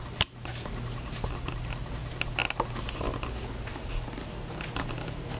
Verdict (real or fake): real